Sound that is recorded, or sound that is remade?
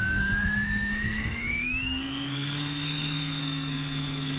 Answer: remade